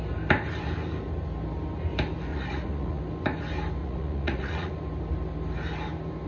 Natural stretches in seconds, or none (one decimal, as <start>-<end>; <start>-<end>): 0.0-2.3; 3.0-3.8; 4.7-6.3